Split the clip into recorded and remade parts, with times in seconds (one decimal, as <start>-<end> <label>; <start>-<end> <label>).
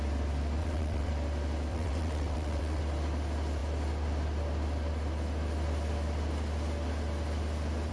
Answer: 0.0-0.6 recorded; 0.6-1.1 remade; 1.1-1.7 recorded; 1.7-2.8 remade; 2.8-7.9 recorded